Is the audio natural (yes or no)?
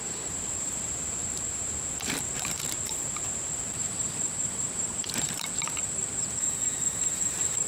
no